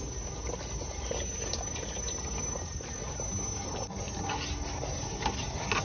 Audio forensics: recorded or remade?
recorded